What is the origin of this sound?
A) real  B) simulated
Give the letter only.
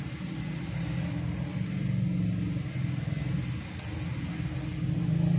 A